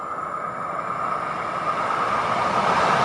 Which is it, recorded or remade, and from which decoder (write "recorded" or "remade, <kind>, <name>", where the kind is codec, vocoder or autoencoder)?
recorded